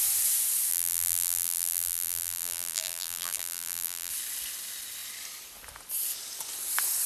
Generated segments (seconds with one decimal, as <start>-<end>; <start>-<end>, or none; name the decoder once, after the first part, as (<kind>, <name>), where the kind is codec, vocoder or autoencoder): 0.7-4.1 (vocoder, BigVGAN v2)